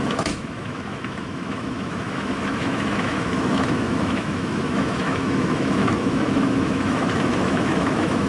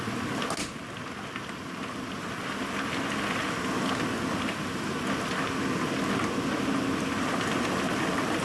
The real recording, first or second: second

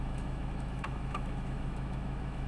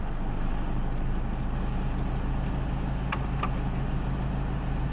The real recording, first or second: second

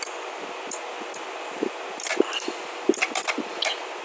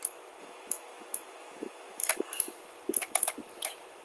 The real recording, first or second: first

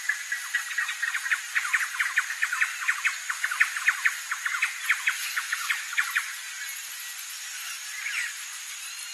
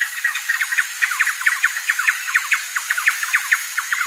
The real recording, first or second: first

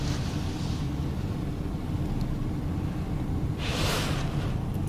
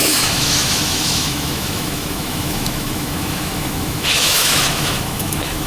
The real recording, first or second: first